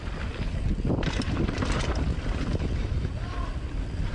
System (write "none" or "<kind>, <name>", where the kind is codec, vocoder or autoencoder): none